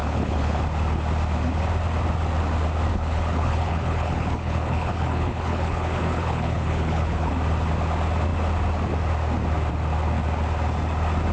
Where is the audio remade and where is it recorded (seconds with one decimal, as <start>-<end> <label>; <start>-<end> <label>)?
0.0-0.6 remade; 0.6-2.9 recorded; 2.9-7.3 remade; 7.3-11.3 recorded